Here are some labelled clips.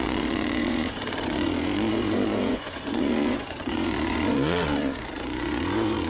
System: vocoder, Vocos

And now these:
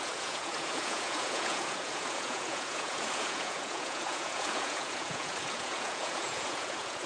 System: vocoder, Vocos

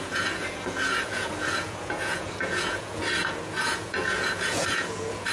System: vocoder, Vocos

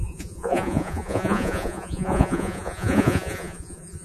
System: vocoder, Vocos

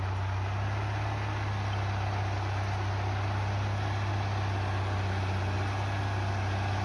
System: none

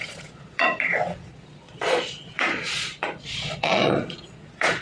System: vocoder, Vocos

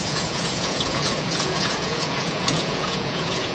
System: vocoder, Vocos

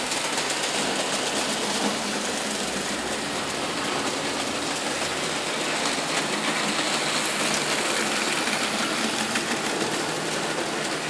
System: none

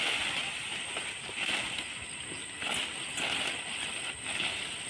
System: none